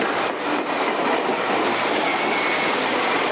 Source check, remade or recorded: recorded